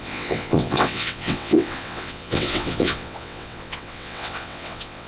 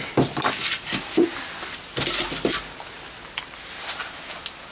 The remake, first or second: first